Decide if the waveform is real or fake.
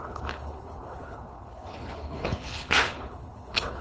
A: fake